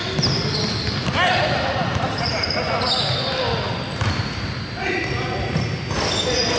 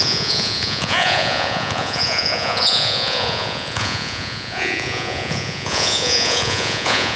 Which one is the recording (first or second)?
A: first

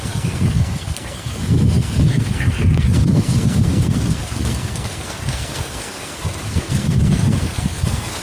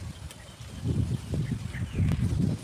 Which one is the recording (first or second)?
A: second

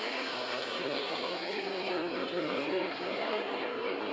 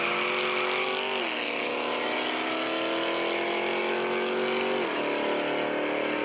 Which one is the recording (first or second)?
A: second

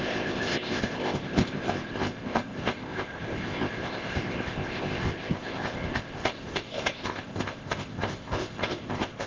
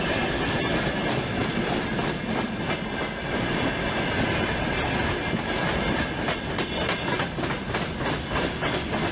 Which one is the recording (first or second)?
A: second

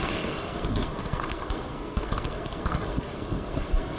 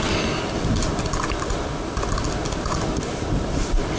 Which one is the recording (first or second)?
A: second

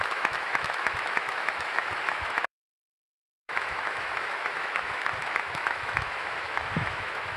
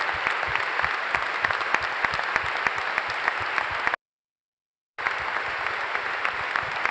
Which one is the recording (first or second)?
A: second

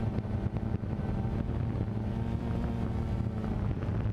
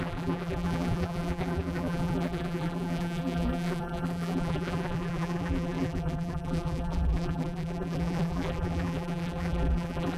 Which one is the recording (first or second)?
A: first